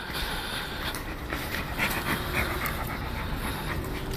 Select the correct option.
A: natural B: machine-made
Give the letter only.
A